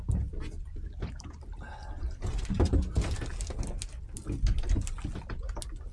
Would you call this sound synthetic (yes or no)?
no